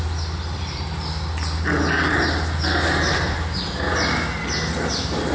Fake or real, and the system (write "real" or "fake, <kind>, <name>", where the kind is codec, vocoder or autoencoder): real